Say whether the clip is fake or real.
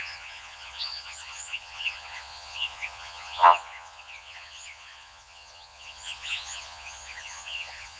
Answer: fake